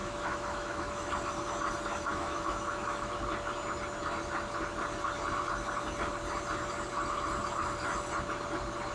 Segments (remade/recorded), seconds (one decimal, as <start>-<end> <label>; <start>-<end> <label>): 0.0-1.1 remade; 1.1-2.1 recorded; 2.1-3.1 remade; 3.1-8.9 recorded